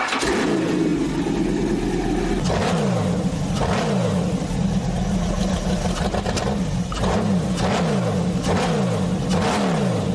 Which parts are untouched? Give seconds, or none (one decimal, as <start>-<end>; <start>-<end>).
0.0-10.1